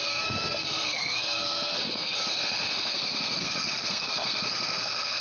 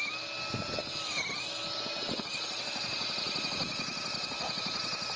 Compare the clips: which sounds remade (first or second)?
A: first